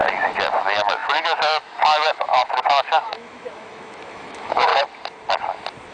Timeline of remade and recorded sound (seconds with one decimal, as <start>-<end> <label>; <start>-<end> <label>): 0.0-0.6 recorded; 0.6-4.7 remade; 4.7-5.9 recorded